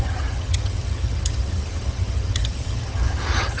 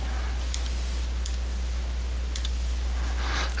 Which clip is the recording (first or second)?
second